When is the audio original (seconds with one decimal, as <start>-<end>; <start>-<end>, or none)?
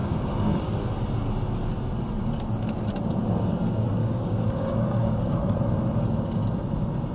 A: 0.6-4.0; 5.5-7.1